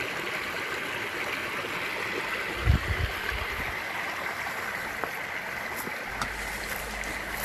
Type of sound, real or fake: real